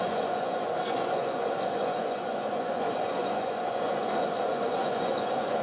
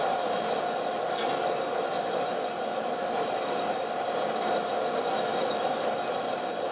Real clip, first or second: second